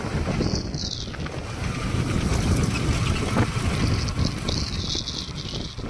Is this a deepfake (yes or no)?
no